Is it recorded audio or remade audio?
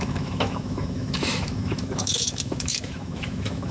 remade